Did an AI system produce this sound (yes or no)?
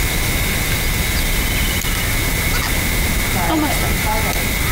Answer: no